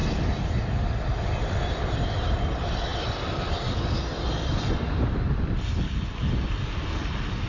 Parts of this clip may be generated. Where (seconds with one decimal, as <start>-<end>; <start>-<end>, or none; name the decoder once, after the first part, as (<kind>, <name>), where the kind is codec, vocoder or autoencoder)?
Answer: none